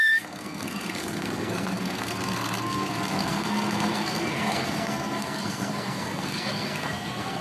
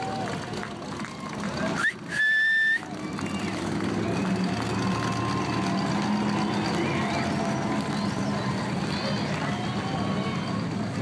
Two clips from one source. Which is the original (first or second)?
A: second